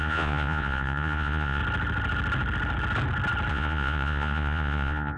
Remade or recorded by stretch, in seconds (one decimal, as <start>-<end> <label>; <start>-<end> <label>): 0.0-1.6 remade; 1.6-3.5 recorded; 3.5-5.2 remade